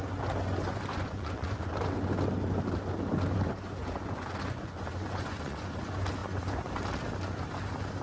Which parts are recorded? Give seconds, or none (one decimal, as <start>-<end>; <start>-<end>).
0.0-0.9; 1.7-3.8; 5.7-6.2; 6.7-8.0